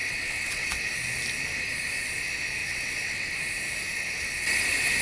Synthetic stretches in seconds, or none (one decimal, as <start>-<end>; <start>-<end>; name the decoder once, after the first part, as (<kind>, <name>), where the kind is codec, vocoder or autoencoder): 0.0-0.8 (vocoder, WaveNeXt); 2.6-3.3